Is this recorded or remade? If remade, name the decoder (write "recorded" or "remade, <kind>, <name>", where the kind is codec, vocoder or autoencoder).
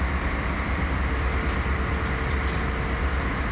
recorded